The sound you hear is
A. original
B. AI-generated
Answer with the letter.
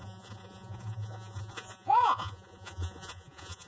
B